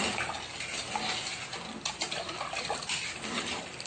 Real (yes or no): yes